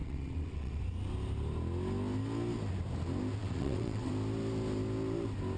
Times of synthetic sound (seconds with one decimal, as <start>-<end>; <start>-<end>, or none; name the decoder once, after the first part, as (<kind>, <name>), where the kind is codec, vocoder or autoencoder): 0.0-0.8 (vocoder, WaveNeXt); 3.4-4.1